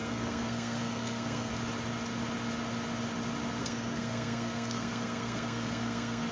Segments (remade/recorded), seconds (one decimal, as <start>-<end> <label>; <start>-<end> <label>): 0.0-1.5 remade; 1.5-3.6 recorded; 3.6-6.3 remade